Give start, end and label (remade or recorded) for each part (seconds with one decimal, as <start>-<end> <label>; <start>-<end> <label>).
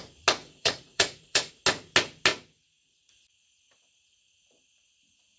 0.0-0.4 recorded; 0.4-1.5 remade; 1.5-5.4 recorded